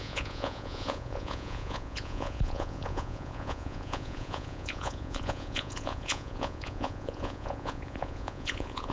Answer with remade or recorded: remade